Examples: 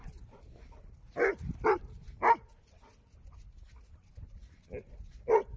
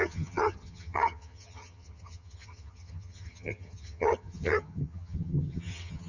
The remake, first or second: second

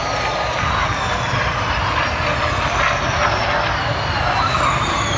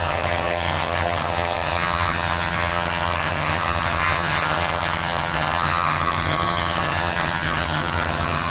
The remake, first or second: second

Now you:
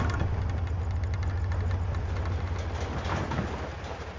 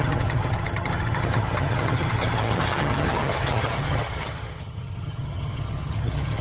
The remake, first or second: second